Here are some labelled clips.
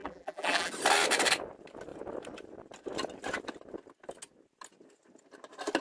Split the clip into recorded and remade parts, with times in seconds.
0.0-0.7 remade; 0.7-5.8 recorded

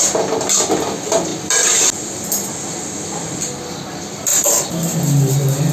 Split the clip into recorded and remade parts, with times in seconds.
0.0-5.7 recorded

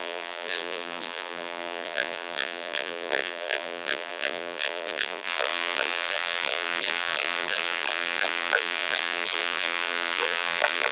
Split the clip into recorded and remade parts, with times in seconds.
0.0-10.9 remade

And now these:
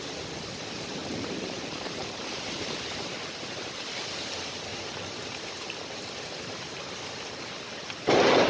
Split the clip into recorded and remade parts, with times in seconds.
0.0-1.0 recorded; 1.0-3.8 remade; 3.8-4.7 recorded; 4.7-6.9 remade; 6.9-8.5 recorded

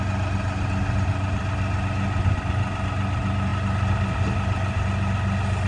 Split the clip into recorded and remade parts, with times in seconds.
0.0-5.7 recorded